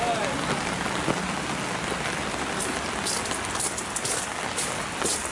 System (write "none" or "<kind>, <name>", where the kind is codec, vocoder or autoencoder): none